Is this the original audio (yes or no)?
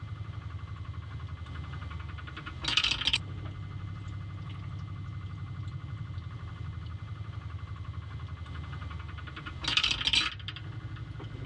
yes